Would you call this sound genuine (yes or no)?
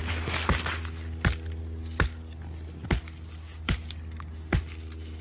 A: yes